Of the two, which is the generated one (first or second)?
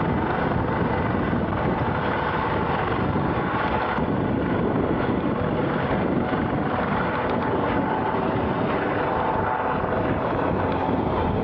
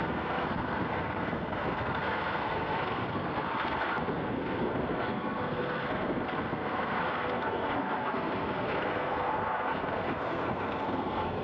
second